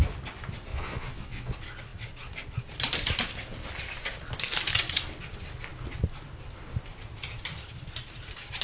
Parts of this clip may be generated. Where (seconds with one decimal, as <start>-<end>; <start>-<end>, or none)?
0.7-1.5